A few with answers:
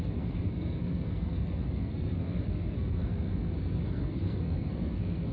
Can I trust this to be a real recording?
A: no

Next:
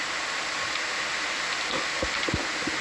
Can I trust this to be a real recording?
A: yes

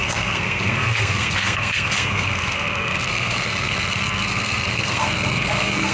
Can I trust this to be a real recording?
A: no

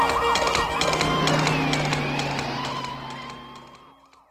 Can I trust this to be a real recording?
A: yes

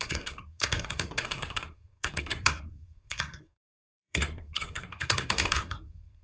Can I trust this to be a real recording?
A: no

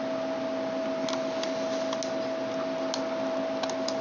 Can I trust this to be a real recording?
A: yes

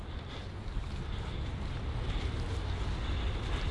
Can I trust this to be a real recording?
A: yes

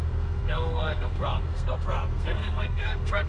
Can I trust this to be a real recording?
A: no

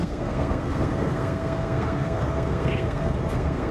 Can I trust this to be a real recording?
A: no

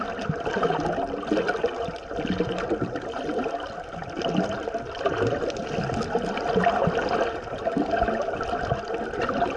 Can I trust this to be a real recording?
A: yes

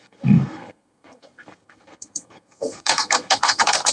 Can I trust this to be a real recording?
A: no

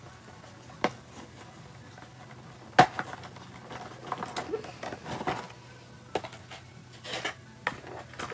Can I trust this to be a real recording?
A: yes